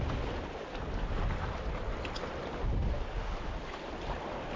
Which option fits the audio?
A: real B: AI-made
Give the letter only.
A